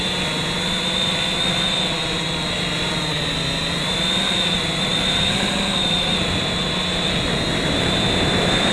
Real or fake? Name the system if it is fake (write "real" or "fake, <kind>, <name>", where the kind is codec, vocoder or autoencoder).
real